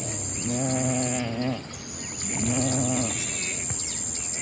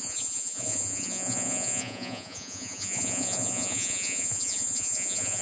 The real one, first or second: first